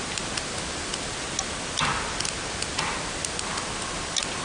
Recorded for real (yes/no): yes